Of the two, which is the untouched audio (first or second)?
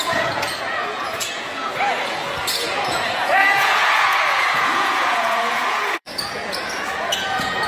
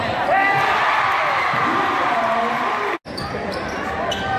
second